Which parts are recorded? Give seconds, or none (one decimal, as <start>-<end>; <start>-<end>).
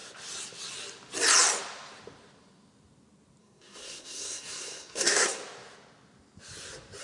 0.0-3.4; 5.4-7.0